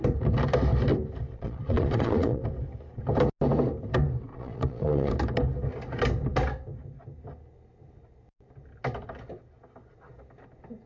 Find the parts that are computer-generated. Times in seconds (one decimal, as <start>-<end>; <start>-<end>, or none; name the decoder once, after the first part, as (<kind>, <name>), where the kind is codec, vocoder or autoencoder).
1.3-2.4 (vocoder, Vocos); 4.3-5.1